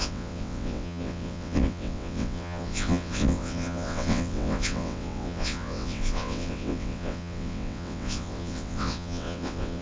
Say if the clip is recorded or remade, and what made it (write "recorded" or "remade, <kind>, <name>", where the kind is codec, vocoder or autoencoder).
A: remade, vocoder, WaveNeXt